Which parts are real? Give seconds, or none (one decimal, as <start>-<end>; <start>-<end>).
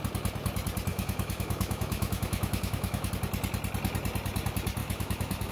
0.0-0.9; 3.1-4.8